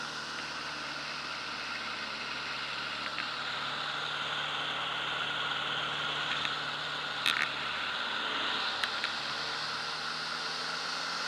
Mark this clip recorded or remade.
recorded